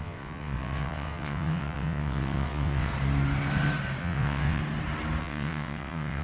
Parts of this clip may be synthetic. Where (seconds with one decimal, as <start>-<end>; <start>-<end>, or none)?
0.0-2.9; 4.0-4.6; 5.2-6.2